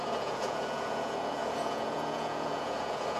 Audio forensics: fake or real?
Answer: fake